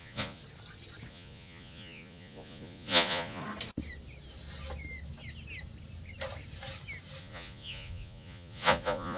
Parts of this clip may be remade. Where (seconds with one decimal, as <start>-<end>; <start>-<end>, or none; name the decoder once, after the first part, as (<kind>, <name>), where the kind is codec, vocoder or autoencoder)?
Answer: 0.0-0.4 (vocoder, Vocos); 1.1-3.4; 7.2-9.2